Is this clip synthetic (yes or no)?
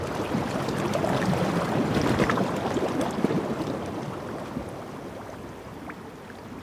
no